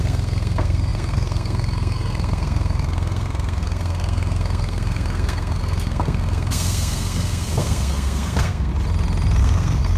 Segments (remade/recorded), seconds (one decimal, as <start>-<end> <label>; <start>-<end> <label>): 0.0-8.7 remade; 8.7-9.4 recorded; 9.4-10.0 remade